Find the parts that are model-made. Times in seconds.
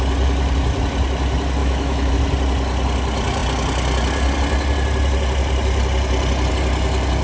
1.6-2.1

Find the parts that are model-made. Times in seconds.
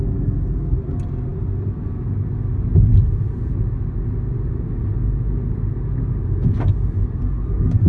none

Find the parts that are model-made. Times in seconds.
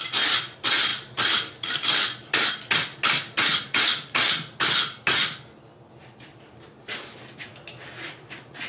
none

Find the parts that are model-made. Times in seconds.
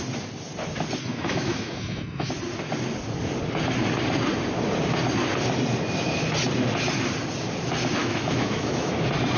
1.0-2.3; 8.0-8.9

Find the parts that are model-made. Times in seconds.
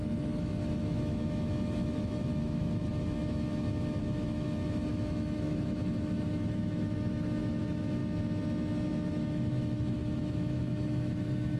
0.0-8.0; 8.9-11.6